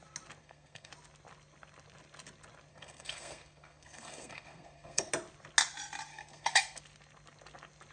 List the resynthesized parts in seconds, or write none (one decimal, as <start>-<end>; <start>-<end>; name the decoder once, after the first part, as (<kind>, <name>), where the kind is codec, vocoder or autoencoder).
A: 0.4-0.9 (codec, SNAC); 2.7-5.1; 6.1-6.8